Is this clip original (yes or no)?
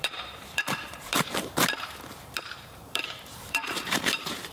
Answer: no